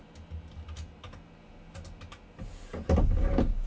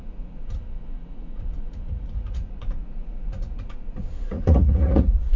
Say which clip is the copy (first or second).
second